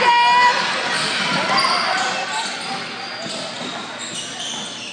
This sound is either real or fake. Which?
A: real